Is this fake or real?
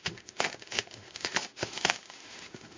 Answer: fake